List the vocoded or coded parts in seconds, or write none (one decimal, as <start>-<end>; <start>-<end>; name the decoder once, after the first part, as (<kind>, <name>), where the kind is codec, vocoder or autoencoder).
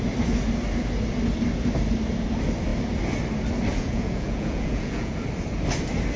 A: 3.7-5.1 (vocoder, Vocos)